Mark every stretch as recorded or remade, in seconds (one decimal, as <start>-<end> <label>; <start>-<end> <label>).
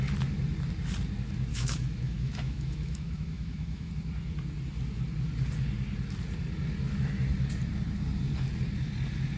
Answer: 0.0-1.5 recorded; 1.5-3.9 remade; 3.9-9.4 recorded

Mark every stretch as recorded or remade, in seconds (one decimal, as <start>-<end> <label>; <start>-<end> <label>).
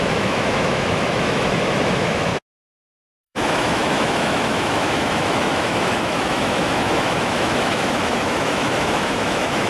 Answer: 0.0-2.3 remade; 2.3-3.2 recorded; 3.2-9.7 remade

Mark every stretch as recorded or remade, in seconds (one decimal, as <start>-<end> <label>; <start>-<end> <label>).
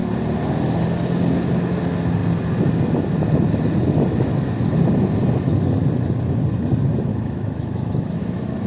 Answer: 0.0-7.1 recorded; 7.1-8.2 remade; 8.2-8.7 recorded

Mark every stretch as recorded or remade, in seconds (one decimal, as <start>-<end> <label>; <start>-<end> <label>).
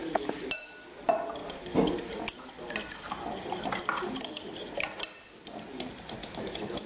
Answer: 0.0-0.7 remade; 0.7-6.2 recorded; 6.2-6.9 remade